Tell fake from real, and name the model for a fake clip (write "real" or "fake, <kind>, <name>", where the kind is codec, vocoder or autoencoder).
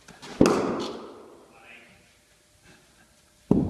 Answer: real